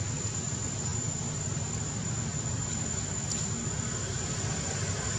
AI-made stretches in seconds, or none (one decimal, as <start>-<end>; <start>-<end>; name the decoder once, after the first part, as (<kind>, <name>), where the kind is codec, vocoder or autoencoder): none